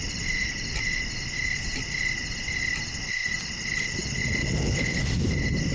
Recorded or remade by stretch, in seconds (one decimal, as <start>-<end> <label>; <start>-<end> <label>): 0.0-4.4 recorded; 4.4-5.0 remade; 5.0-5.7 recorded